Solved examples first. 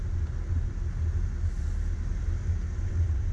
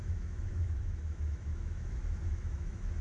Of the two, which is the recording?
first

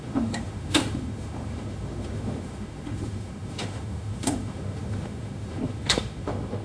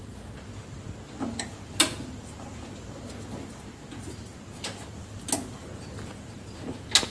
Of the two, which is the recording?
second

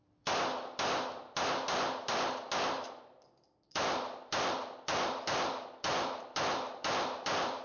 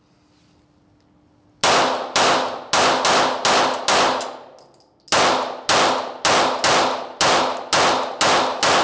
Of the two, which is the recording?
second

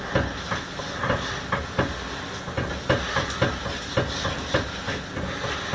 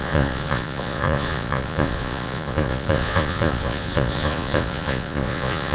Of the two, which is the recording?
first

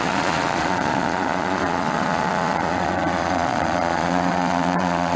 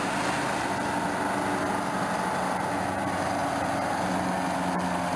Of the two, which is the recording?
second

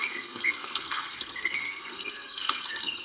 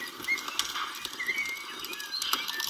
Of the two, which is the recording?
second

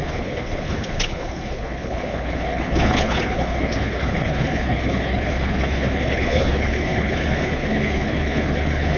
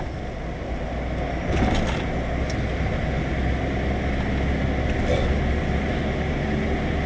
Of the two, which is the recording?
second